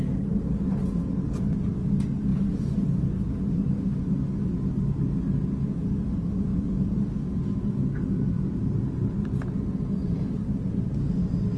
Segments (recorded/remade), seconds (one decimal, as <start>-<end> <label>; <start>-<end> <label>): 0.0-10.0 recorded; 10.0-10.9 remade; 10.9-11.6 recorded